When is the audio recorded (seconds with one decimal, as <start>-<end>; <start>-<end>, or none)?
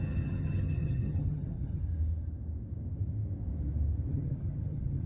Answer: 1.8-4.1